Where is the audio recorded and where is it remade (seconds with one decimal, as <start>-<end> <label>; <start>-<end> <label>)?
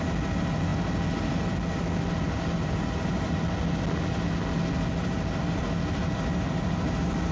0.0-7.3 recorded